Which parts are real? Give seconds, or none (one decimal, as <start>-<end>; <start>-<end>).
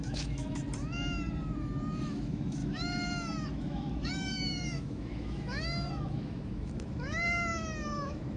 0.6-2.0